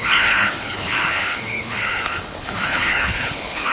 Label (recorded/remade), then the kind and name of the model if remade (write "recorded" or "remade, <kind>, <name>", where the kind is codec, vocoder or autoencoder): remade, codec, HILCodec